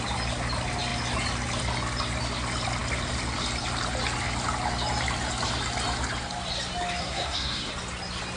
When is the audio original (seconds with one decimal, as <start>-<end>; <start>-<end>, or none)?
0.0-7.0; 7.7-8.4